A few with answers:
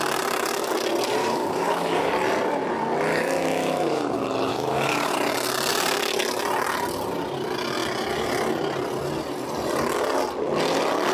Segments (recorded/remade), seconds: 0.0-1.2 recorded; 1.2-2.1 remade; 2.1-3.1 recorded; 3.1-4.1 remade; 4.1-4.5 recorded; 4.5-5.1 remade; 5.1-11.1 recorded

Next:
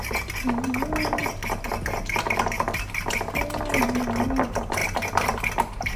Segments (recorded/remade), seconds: 0.0-4.8 recorded; 4.8-6.0 remade

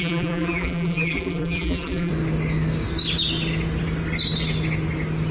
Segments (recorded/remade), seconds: 0.0-2.1 remade; 2.1-5.3 recorded

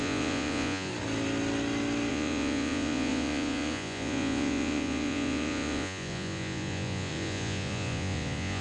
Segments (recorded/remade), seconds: 0.0-0.9 remade; 0.9-2.1 recorded; 2.1-8.6 remade